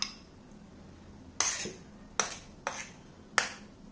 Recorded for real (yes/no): yes